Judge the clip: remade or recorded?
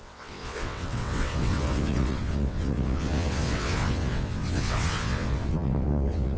remade